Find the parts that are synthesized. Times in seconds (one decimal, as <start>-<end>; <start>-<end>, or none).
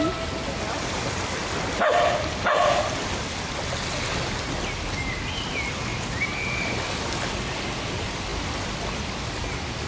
none